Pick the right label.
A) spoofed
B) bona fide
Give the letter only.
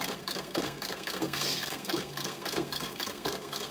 A